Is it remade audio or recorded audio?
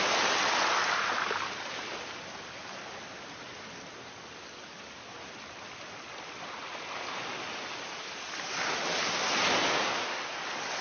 recorded